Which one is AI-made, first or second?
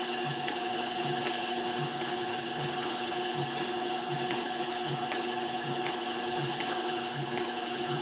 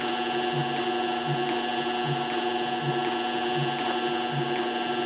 first